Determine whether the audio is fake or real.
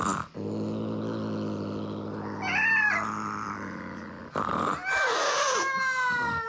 real